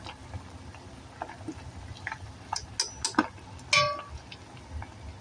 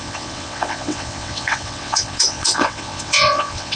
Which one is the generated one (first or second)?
second